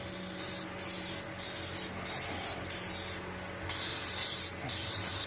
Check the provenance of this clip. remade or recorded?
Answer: recorded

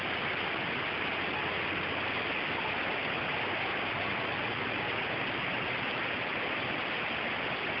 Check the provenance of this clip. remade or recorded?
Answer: recorded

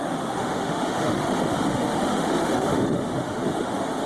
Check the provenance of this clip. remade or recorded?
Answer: remade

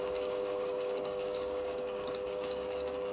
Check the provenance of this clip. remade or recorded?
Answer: remade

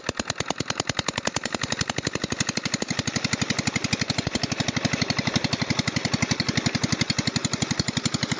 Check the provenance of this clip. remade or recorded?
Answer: recorded